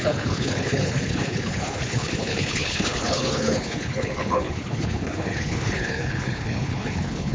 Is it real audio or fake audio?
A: fake